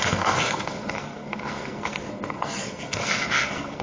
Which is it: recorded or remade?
remade